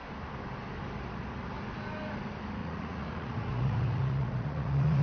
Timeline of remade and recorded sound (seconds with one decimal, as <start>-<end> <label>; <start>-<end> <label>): 0.0-2.6 recorded; 2.6-5.0 remade